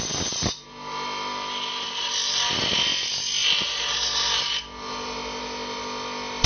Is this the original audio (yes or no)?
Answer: yes